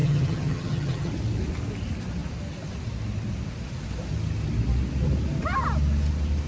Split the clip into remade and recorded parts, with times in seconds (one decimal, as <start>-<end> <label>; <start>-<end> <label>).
0.0-1.1 remade; 1.1-6.5 recorded